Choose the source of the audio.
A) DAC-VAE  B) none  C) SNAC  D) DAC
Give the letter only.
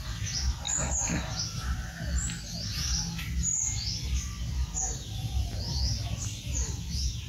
B